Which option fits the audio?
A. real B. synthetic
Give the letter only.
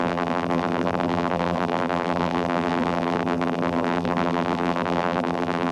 B